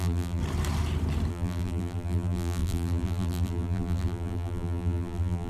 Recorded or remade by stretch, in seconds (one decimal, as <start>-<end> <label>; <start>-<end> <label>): 0.0-0.4 remade; 0.4-1.3 recorded; 1.3-5.5 remade